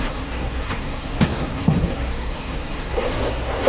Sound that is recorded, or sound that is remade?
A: remade